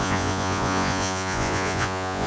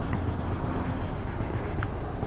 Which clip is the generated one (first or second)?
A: first